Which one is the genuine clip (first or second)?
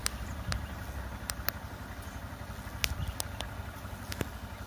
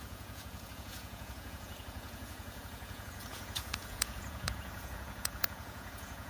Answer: first